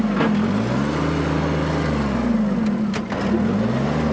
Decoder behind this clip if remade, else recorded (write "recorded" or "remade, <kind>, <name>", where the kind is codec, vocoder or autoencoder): recorded